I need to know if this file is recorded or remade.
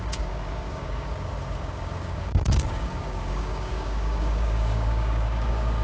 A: remade